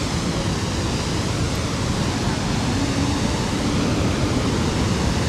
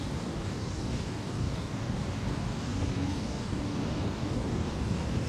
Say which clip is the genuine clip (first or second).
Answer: first